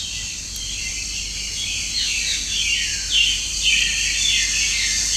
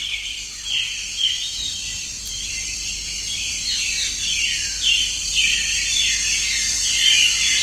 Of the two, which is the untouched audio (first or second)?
first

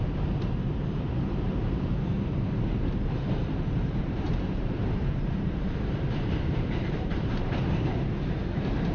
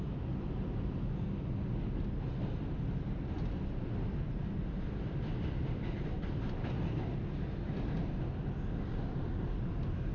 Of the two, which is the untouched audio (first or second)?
second